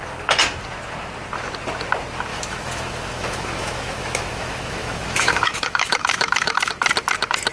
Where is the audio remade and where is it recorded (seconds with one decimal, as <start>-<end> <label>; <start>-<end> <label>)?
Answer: 0.0-2.3 recorded; 2.3-6.7 remade; 6.7-7.5 recorded